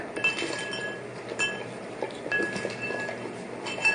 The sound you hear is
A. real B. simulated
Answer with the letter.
A